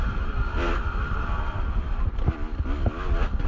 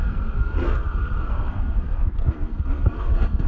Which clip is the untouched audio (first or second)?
first